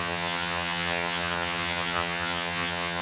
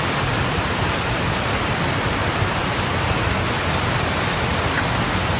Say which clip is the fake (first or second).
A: first